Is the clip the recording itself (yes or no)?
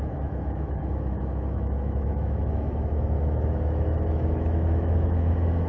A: no